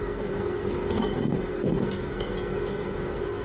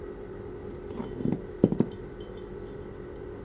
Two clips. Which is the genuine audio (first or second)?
second